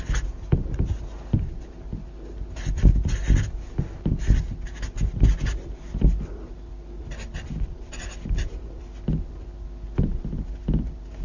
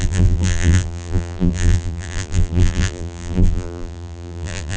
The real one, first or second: first